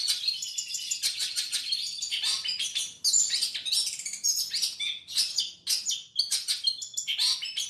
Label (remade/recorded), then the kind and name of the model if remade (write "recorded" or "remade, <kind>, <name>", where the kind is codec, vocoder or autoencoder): recorded